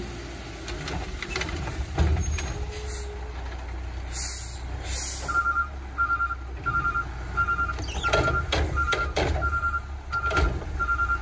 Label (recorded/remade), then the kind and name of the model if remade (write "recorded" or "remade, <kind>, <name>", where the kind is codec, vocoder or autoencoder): recorded